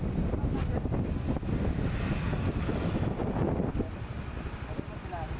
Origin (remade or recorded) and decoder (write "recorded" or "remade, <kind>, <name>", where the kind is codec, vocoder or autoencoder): recorded